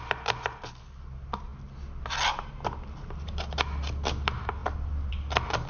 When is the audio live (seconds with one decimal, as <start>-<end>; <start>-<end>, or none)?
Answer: 0.0-5.7

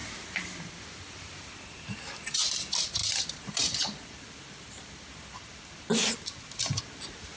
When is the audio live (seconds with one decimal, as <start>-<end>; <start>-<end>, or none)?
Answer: 0.0-3.0; 6.8-7.4

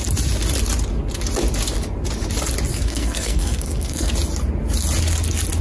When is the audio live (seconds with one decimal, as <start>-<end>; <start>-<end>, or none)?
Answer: 0.0-2.7; 4.1-5.6

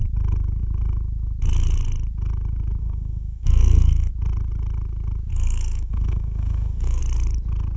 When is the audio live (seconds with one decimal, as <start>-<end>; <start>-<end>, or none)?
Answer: 0.0-2.8; 4.1-5.3; 7.0-7.8

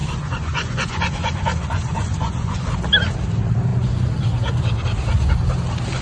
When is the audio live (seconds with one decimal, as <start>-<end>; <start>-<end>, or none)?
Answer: 2.7-3.7; 4.6-6.0

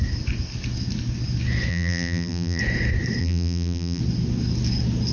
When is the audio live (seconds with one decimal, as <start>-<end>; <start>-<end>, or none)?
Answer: 0.0-1.7; 2.6-3.2; 4.0-5.1

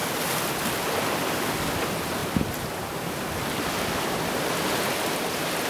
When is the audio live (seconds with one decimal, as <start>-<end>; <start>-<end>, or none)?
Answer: 0.0-5.7